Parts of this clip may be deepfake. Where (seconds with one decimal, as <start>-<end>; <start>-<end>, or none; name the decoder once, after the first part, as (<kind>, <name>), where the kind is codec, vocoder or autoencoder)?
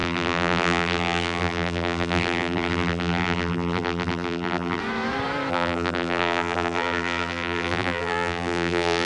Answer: 0.0-4.8 (vocoder, BigVGAN v2); 5.5-9.0